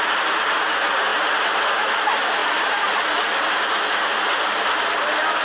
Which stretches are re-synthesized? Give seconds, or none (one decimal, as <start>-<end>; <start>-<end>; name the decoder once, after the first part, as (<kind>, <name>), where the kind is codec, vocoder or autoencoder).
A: 2.4-2.9 (vocoder, BigVGAN v2)